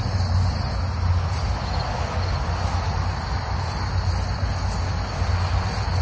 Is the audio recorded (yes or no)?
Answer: yes